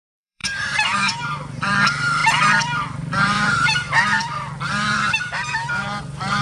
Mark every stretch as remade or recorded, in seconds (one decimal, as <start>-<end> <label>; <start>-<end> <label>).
0.0-6.4 remade